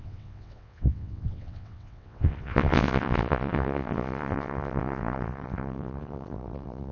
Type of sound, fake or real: fake